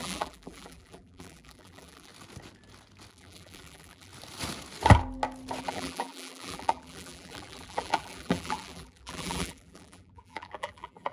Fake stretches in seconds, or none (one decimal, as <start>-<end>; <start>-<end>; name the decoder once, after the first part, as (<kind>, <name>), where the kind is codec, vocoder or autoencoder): 0.0-2.1 (vocoder, BigVGAN v2); 3.1-4.1; 5.6-11.1